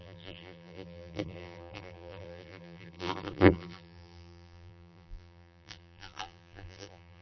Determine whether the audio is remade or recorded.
remade